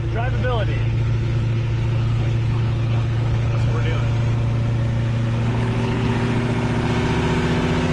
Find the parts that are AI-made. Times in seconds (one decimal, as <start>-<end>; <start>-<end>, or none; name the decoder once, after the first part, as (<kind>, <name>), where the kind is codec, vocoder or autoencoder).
0.8-3.7 (codec, HILCodec); 5.5-6.1